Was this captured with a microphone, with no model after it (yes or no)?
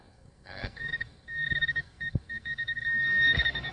no